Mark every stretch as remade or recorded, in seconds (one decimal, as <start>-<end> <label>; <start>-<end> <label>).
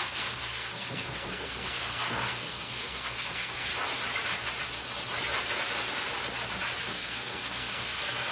0.0-3.7 remade; 3.7-6.8 recorded; 6.8-8.3 remade